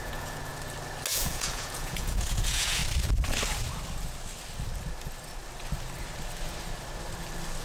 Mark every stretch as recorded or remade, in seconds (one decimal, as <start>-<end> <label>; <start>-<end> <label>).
0.0-0.5 remade; 0.5-1.1 recorded; 1.1-2.8 remade; 2.8-7.6 recorded